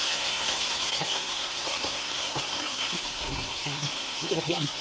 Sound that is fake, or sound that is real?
fake